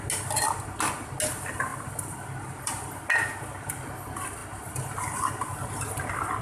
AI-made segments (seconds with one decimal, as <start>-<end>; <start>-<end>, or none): 1.7-3.0